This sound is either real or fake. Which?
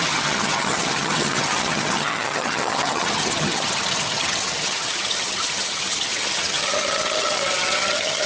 fake